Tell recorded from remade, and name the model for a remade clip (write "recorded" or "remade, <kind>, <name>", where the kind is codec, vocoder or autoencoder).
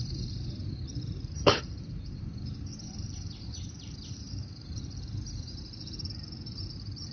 remade, vocoder, BigVGAN v2